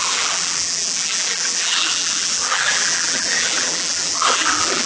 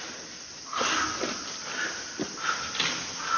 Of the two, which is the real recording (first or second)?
second